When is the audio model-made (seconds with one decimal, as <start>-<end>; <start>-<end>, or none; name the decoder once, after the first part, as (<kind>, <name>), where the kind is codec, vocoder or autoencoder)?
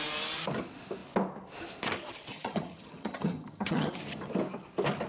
2.3-3.9 (vocoder, HiFi-GAN)